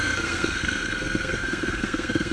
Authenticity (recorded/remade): remade